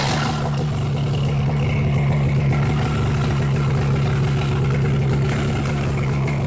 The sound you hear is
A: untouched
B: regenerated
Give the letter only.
A